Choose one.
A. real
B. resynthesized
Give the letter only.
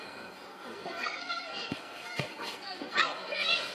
B